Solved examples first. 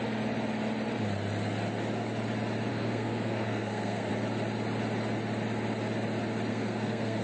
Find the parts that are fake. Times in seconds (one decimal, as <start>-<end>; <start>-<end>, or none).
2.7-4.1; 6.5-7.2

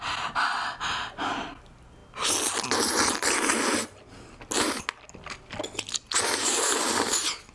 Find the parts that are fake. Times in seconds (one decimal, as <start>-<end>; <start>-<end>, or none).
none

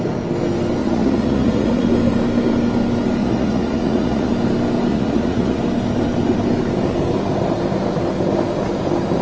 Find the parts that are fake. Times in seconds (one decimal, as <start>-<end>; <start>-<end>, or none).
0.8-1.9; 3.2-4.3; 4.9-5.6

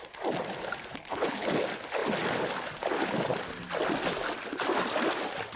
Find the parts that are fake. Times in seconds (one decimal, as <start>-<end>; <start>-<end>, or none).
0.9-1.5

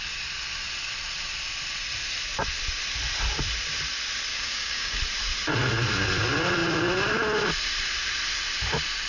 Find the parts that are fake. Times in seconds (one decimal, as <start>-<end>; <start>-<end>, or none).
4.3-5.0

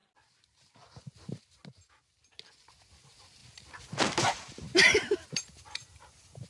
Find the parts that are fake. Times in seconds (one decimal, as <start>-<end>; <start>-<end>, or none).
2.7-3.4; 4.2-6.5

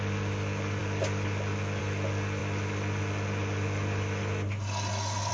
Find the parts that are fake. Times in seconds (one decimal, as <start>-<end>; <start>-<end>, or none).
none

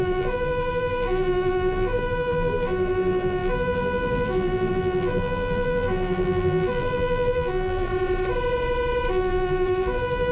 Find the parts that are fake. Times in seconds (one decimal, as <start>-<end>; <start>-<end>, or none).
0.0-7.9; 9.1-10.3